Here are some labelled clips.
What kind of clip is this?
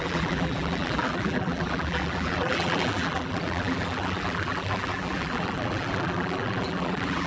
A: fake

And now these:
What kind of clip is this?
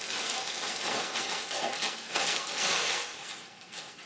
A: fake